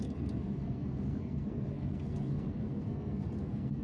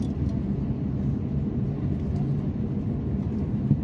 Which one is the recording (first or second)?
second